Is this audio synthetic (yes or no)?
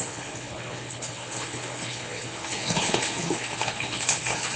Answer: yes